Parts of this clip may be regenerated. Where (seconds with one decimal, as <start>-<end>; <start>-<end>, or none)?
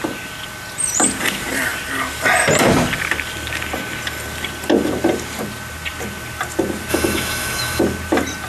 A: 6.9-7.8